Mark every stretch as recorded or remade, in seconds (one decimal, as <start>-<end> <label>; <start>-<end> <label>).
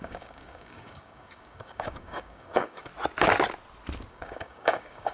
0.0-2.9 remade; 2.9-4.1 recorded; 4.1-5.1 remade